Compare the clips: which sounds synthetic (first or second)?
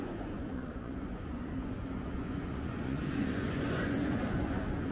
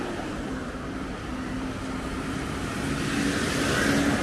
first